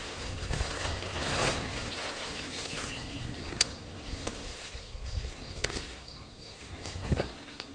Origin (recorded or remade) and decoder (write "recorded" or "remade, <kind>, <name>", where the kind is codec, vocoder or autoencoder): remade, codec, SNAC